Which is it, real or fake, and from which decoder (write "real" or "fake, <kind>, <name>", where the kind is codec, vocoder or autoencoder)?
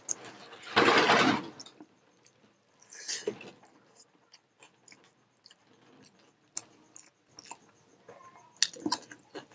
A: real